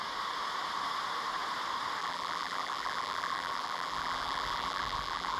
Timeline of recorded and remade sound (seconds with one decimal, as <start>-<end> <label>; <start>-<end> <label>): 0.0-2.0 recorded; 2.0-5.4 remade